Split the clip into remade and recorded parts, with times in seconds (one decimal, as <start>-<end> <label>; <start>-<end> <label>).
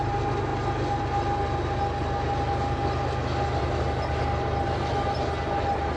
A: 0.0-6.0 recorded